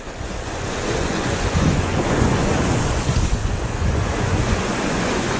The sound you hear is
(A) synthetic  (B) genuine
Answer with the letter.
A